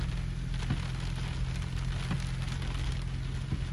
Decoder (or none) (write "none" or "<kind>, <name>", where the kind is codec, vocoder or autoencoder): none